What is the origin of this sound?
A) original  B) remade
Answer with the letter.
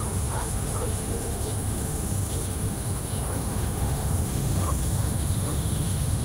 B